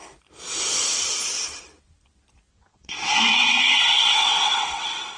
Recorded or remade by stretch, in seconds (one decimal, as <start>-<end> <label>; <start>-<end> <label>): 0.0-2.5 recorded; 2.5-5.2 remade